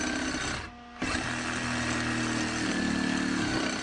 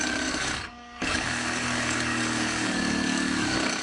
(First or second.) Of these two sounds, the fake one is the second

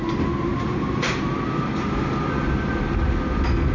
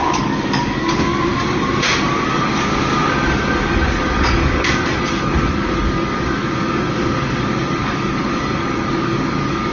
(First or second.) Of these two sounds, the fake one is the second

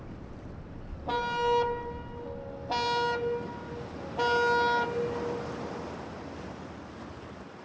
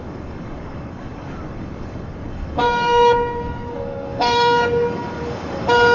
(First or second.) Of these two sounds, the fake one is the second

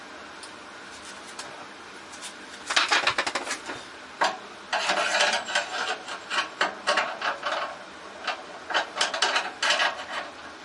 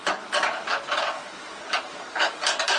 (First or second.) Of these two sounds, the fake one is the second